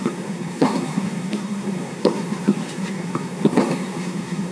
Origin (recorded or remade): remade